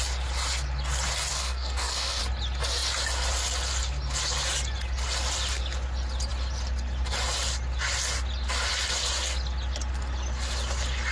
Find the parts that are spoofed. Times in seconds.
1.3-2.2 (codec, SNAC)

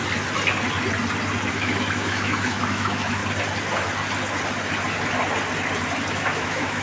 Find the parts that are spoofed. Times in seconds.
1.5-3.2 (autoencoder, DAC-VAE); 6.1-6.8